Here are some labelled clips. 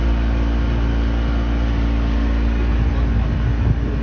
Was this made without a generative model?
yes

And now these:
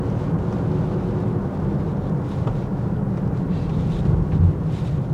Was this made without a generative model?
yes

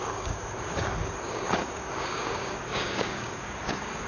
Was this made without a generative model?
no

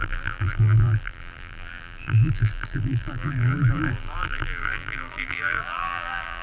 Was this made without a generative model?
no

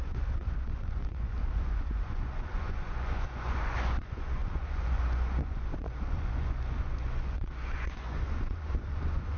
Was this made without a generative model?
no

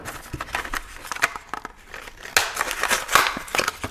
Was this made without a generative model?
yes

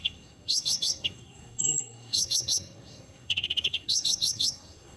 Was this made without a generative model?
no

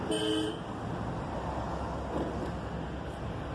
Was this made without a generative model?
yes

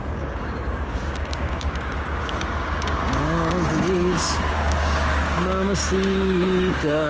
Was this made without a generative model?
no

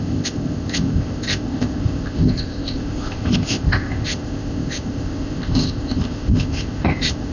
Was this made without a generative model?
no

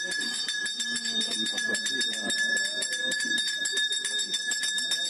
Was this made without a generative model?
yes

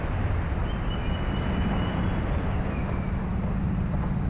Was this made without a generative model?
yes